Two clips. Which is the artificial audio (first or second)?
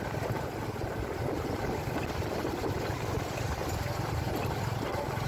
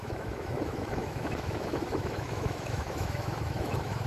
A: second